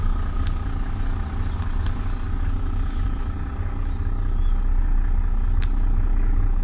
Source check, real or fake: real